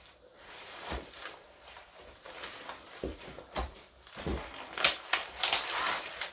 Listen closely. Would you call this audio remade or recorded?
remade